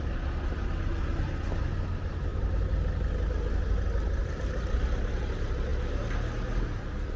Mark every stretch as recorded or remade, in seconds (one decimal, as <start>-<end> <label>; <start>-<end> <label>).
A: 0.0-7.2 recorded